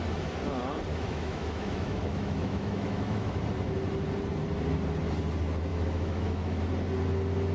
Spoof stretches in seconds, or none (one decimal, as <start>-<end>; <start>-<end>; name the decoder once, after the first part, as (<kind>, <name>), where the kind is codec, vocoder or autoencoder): 0.9-3.4 (autoencoder, DAC-VAE); 5.7-6.6